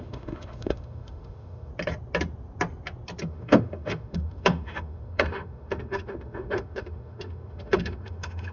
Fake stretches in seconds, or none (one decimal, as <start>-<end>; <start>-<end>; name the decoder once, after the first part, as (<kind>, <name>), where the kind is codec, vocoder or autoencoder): 0.0-1.7 (autoencoder, DAC-VAE); 3.2-8.5